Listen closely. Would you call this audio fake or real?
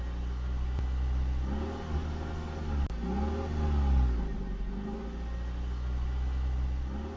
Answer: real